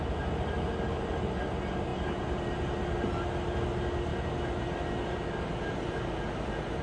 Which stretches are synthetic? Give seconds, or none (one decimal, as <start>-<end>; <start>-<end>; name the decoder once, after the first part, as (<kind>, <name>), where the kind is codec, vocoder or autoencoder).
none